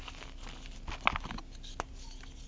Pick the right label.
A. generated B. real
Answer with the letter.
B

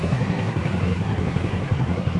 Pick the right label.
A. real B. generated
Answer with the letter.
B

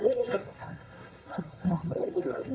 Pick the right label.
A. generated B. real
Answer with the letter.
A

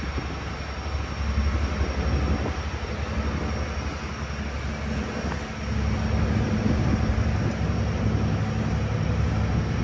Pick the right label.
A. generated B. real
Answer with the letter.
B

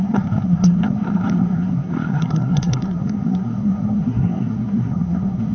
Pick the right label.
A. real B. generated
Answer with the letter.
B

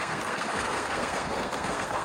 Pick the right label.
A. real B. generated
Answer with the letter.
B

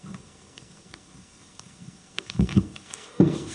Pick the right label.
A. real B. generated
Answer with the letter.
B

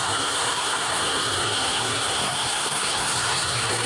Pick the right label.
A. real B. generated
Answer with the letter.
B